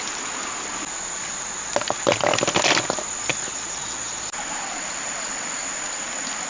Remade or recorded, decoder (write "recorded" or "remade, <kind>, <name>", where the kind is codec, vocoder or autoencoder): recorded